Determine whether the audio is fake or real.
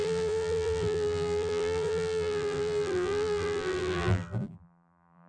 fake